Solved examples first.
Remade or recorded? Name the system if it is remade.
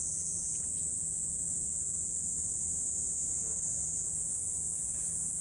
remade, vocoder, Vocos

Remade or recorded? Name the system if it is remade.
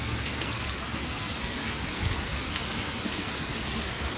remade, codec, SNAC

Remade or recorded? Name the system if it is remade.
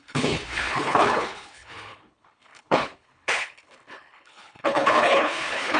remade, codec, HILCodec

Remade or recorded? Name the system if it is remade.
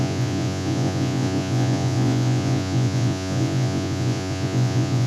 remade, vocoder, Vocos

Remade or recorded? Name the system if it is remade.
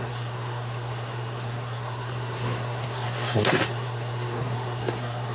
remade, codec, SNAC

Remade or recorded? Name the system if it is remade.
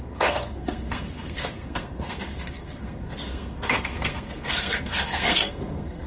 remade, codec, SNAC